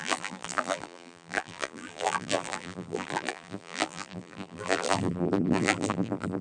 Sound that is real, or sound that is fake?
fake